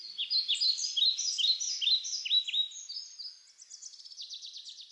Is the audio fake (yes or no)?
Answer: no